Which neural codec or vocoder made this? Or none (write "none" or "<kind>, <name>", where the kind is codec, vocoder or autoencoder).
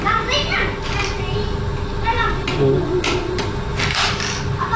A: none